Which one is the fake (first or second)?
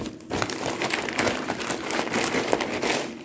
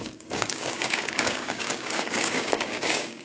second